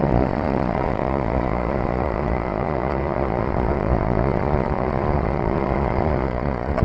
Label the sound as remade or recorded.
remade